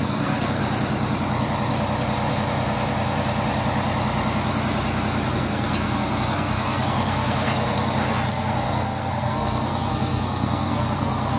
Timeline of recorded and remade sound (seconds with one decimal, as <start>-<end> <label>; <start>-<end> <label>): 0.0-0.6 remade; 0.6-5.3 recorded; 5.3-11.4 remade